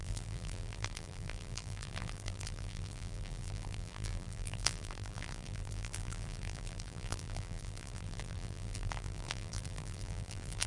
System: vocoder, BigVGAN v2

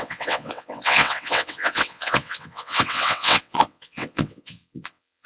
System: vocoder, WaveNeXt